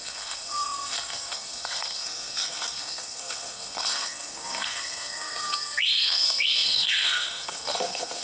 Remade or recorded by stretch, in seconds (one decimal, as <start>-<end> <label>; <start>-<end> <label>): 0.0-8.2 remade